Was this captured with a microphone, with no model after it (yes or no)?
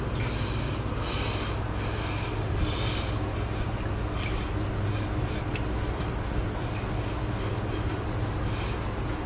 yes